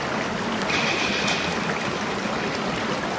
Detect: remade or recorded recorded